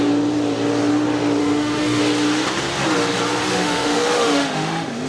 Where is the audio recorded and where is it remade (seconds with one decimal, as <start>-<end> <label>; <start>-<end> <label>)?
0.0-1.4 recorded; 1.4-2.0 remade; 2.0-3.4 recorded; 3.4-5.1 remade